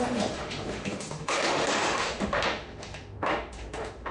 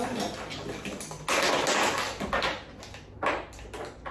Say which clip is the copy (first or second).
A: first